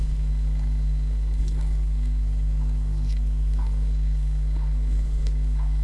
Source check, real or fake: fake